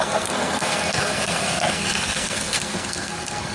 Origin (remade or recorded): remade